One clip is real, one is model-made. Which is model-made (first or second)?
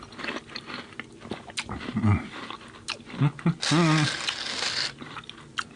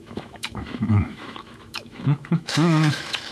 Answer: second